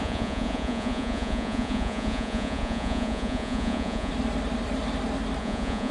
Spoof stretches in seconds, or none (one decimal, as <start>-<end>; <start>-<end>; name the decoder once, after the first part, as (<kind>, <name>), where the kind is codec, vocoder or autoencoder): 0.0-4.1 (vocoder, Vocos); 5.4-5.9